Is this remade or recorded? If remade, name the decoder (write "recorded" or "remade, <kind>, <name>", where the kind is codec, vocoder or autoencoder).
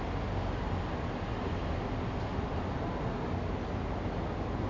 recorded